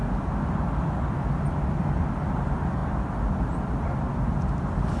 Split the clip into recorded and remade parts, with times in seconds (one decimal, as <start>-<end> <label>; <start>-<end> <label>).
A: 0.0-5.0 recorded